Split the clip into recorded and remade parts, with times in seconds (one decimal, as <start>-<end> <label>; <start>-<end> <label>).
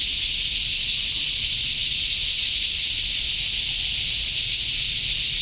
0.0-1.5 recorded; 1.5-3.3 remade; 3.3-5.4 recorded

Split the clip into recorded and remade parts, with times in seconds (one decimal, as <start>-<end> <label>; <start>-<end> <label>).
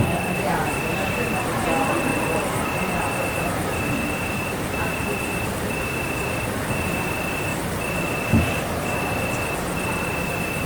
0.0-2.1 recorded; 2.1-7.0 remade; 7.0-10.7 recorded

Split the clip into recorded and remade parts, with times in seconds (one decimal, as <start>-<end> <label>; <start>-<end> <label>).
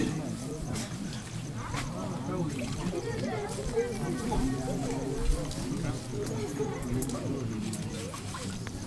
0.0-1.4 remade; 1.4-2.5 recorded; 2.5-3.4 remade; 3.4-4.2 recorded; 4.2-5.2 remade; 5.2-5.9 recorded; 5.9-8.9 remade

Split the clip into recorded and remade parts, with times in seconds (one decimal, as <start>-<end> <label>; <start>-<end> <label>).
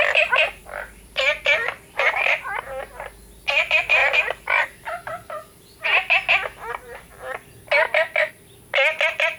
0.0-0.6 recorded; 0.6-2.2 remade; 2.2-9.4 recorded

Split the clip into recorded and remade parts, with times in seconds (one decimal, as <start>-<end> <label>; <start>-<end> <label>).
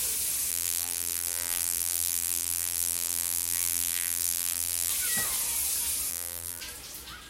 0.0-0.5 recorded; 0.5-4.9 remade; 4.9-6.1 recorded; 6.1-6.6 remade; 6.6-7.3 recorded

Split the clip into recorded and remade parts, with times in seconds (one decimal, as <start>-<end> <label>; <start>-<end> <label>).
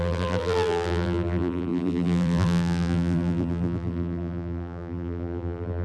0.0-5.8 remade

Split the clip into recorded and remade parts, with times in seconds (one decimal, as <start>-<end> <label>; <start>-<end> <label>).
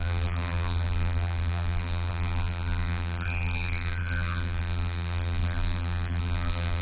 0.0-6.8 remade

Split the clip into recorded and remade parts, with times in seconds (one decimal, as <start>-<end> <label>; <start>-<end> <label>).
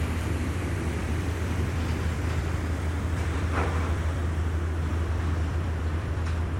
0.0-4.2 remade; 4.2-4.9 recorded; 4.9-6.6 remade